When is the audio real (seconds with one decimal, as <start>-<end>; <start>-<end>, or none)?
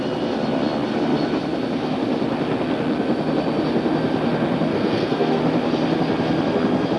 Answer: 0.0-4.7; 5.4-7.0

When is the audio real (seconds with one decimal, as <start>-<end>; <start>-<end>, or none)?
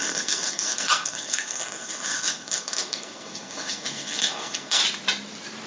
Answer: 4.8-5.7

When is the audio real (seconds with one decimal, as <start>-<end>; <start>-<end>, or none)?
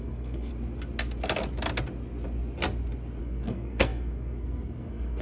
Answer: 0.5-3.2